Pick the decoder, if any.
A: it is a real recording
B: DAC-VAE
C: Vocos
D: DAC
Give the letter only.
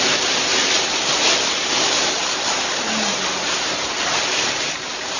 A